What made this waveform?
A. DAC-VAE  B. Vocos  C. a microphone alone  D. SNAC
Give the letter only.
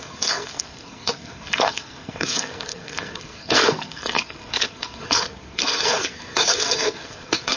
D